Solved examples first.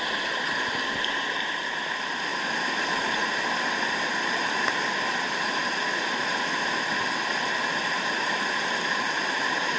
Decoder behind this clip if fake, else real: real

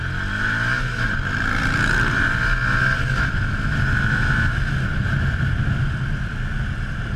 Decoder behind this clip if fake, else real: real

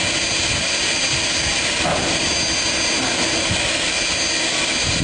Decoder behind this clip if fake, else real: real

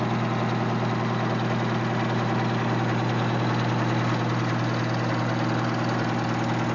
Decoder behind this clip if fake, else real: real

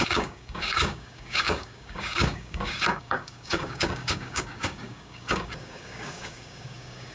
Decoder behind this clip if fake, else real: fake, codec, DAC